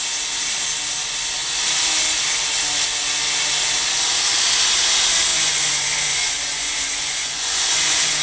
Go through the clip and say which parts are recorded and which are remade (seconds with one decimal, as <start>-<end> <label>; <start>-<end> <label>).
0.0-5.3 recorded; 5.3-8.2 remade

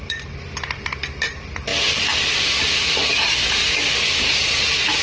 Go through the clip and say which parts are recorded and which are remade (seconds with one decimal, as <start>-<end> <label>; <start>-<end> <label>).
0.0-5.0 recorded

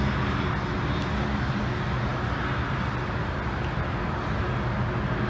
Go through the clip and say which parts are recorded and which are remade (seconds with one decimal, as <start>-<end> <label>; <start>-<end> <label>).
0.0-5.3 recorded

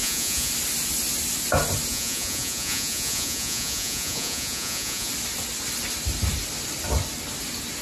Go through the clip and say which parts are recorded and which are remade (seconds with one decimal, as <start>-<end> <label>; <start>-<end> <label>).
0.0-0.5 remade; 0.5-1.9 recorded; 1.9-5.1 remade; 5.1-7.8 recorded

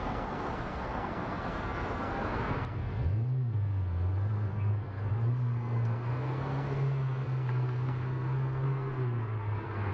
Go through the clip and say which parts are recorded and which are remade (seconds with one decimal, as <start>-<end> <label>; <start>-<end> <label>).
0.0-9.9 remade

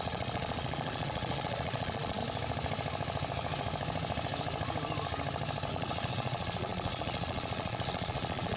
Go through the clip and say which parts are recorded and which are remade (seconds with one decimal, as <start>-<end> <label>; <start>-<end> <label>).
0.0-2.2 remade; 2.2-5.7 recorded; 5.7-8.6 remade

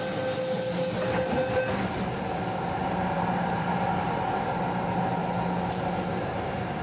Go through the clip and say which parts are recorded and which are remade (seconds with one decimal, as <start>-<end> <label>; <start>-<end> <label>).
0.0-2.8 recorded; 2.8-4.6 remade; 4.6-6.8 recorded